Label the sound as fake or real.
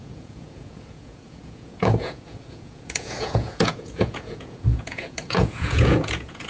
fake